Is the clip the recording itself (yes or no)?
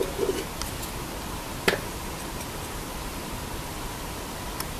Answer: yes